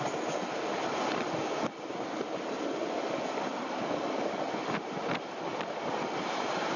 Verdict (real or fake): real